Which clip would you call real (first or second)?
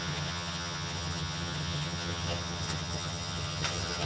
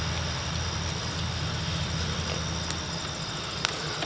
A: second